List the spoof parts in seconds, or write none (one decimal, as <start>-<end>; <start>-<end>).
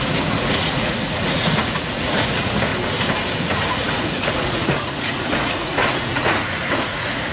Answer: 0.0-2.7; 3.4-7.3